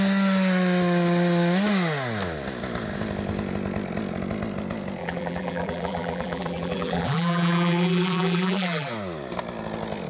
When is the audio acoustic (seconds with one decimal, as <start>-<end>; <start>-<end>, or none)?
0.0-5.0; 8.9-10.1